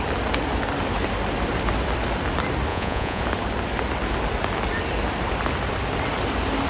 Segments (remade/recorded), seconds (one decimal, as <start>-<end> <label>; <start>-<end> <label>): 0.0-2.7 recorded; 2.7-3.2 remade; 3.2-6.7 recorded